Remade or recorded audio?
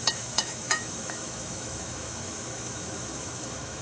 remade